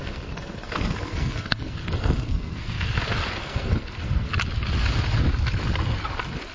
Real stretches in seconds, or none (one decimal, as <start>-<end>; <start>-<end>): 3.0-3.4; 4.3-6.5

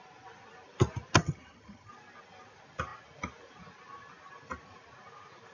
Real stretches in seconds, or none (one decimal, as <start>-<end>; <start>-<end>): 0.0-1.2; 1.9-5.5

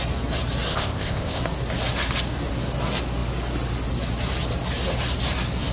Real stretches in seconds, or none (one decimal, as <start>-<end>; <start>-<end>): 0.0-0.7; 1.4-5.7

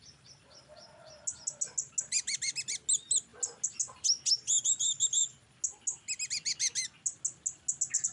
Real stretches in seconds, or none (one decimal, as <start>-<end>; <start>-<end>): 0.0-8.1

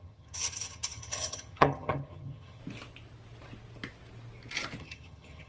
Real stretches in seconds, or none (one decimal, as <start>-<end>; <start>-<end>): 2.6-4.8

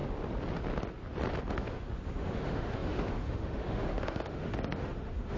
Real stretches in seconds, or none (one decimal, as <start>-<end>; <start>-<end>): 0.0-1.5

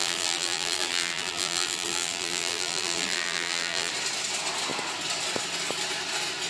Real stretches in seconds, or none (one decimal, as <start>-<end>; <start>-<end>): 3.9-6.5